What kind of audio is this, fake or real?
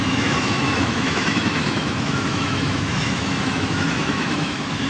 fake